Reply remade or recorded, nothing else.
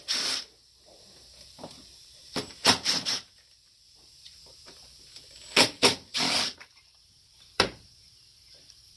remade